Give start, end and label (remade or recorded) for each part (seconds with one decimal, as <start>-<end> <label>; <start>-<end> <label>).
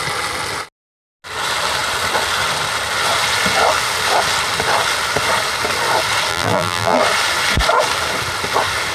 0.0-6.3 recorded; 6.3-7.0 remade; 7.0-8.9 recorded